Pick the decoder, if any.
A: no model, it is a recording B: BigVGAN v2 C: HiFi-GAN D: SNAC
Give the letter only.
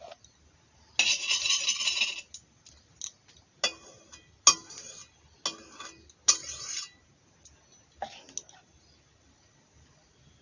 A